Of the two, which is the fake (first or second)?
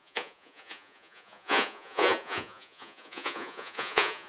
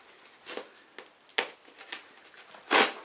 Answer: first